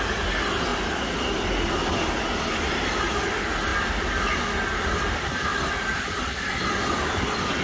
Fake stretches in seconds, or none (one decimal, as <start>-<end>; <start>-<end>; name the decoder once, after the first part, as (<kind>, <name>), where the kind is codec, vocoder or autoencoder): none